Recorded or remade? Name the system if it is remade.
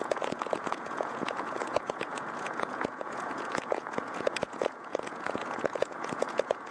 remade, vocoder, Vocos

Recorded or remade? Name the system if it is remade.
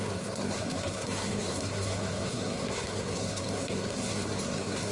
remade, codec, SNAC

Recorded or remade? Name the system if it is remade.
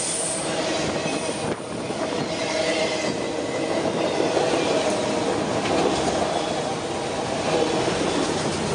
recorded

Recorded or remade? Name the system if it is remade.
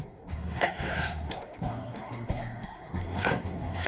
remade, codec, SNAC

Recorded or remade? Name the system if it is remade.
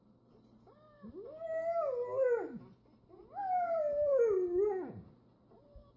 recorded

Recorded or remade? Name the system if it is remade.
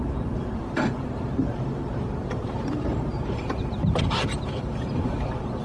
remade, vocoder, BigVGAN v2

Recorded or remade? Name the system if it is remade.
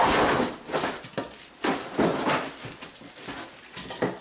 recorded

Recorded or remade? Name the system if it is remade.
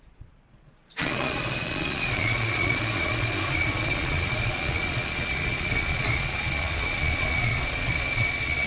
remade, vocoder, Vocos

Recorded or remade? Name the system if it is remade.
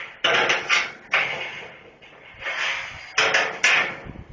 recorded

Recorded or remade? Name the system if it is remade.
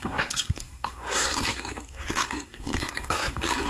remade, codec, SNAC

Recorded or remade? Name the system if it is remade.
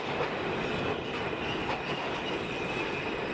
recorded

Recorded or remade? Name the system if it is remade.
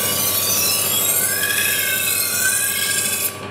recorded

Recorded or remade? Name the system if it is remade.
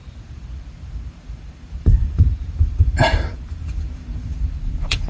remade, vocoder, BigVGAN v2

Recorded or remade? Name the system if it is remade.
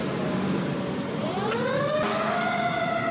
recorded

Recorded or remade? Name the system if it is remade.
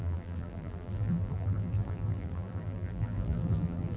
remade, vocoder, BigVGAN v2